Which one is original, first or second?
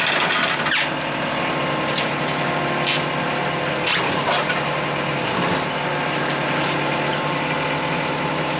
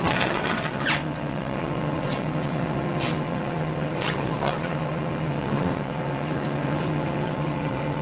first